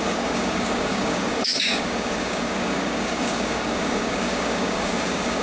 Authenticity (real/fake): fake